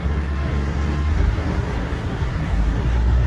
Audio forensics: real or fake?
fake